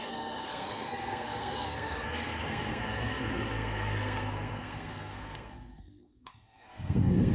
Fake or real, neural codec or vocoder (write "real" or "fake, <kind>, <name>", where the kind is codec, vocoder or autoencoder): fake, codec, SNAC